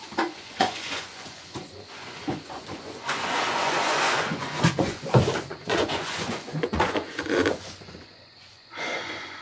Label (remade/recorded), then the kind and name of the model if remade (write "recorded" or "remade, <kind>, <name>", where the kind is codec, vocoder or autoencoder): remade, vocoder, Vocos